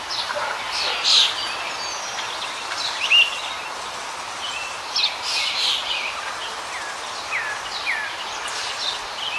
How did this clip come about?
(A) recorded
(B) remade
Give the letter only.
A